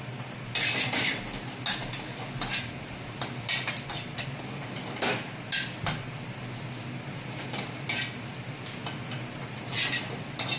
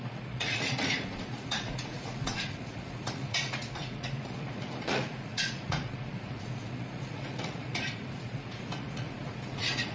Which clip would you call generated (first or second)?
second